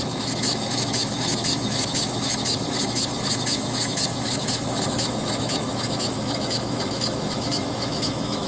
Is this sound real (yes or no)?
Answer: no